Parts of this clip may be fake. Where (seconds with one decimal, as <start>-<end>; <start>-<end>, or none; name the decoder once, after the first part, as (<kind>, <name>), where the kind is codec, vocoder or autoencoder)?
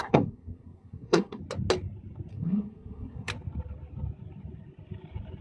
0.0-1.4 (codec, SNAC); 2.3-3.3